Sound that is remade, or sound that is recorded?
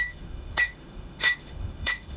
remade